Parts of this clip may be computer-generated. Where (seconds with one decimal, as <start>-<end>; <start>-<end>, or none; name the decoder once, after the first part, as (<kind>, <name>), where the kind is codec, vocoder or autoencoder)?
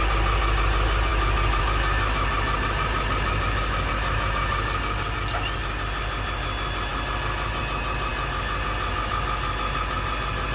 none